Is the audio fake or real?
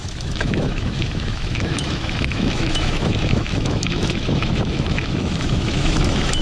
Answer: fake